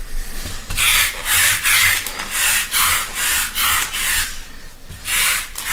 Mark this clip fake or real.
real